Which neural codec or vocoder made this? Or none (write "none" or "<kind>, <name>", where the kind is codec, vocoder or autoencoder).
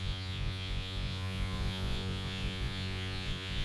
vocoder, Vocos